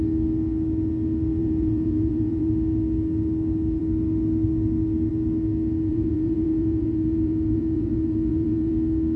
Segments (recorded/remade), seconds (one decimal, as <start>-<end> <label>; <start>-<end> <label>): 0.0-1.4 recorded; 1.4-2.5 remade; 2.5-5.9 recorded; 5.9-8.7 remade; 8.7-9.2 recorded